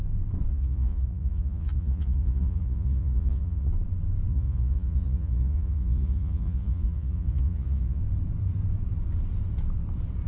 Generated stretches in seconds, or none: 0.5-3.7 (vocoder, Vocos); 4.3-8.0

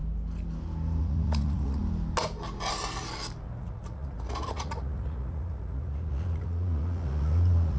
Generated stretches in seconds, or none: 1.0-1.8 (vocoder, Vocos); 3.6-7.8

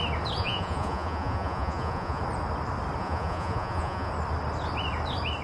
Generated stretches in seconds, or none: 0.4-2.2 (vocoder, Vocos); 3.0-4.1